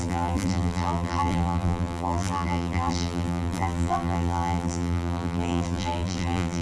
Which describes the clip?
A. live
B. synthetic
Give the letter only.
B